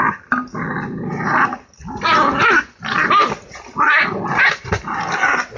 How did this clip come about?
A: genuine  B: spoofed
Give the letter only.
A